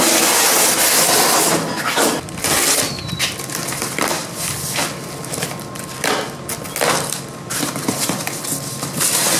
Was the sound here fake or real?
real